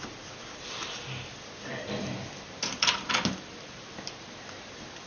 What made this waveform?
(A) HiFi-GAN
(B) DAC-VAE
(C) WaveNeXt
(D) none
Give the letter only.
D